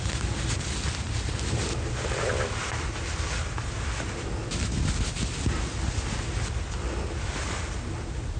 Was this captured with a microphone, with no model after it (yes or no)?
yes